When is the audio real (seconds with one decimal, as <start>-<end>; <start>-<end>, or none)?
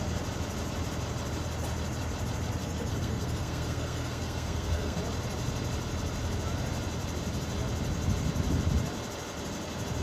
0.0-2.6; 5.0-10.0